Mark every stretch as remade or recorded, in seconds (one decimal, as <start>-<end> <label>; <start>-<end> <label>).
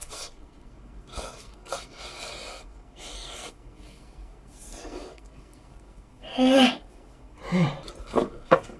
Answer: 0.0-7.4 remade; 7.4-8.0 recorded; 8.0-8.8 remade